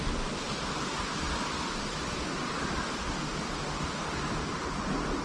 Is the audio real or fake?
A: real